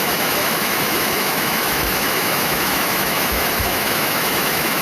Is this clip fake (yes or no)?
yes